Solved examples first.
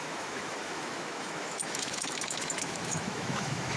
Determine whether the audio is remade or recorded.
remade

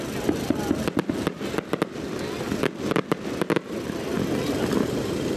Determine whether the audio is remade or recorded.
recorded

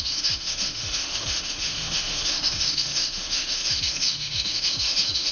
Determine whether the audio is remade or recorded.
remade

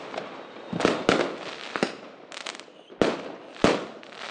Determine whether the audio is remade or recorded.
recorded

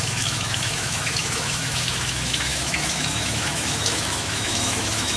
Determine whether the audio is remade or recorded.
remade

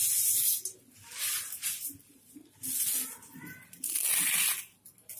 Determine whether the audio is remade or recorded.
recorded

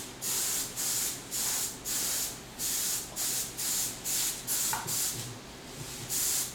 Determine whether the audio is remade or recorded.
recorded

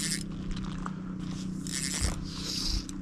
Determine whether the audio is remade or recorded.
recorded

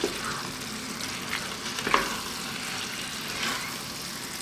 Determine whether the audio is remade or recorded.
recorded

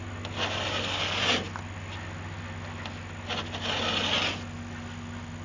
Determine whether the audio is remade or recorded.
recorded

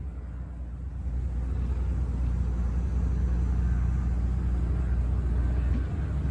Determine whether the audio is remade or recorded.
recorded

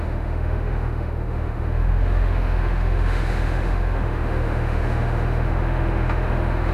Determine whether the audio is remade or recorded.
remade